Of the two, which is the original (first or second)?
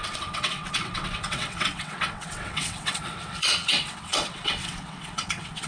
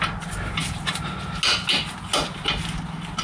second